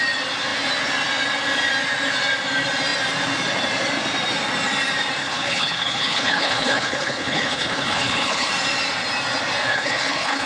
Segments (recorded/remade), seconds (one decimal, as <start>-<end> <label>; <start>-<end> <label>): 0.0-5.2 recorded; 5.2-8.5 remade; 8.5-9.7 recorded; 9.7-10.5 remade